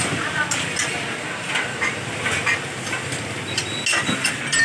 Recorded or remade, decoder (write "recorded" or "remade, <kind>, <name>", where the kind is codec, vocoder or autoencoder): recorded